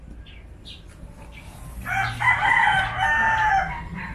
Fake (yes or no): no